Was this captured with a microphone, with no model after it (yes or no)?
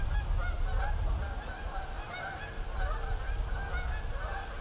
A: yes